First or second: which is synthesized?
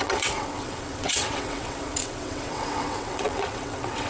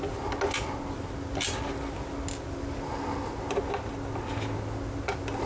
first